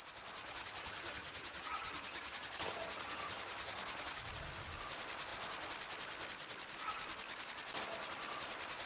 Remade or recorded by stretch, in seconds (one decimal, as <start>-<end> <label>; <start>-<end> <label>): 0.0-0.4 recorded; 0.4-4.3 remade; 4.3-8.9 recorded